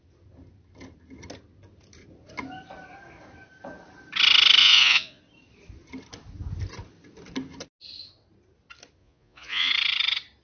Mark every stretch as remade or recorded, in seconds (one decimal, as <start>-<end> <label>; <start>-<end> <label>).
0.0-4.6 recorded; 4.6-5.2 remade; 5.2-9.0 recorded; 9.0-9.7 remade; 9.7-10.4 recorded